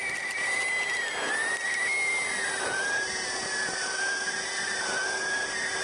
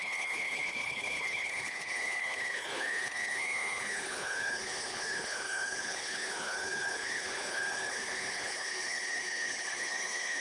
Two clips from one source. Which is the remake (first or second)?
second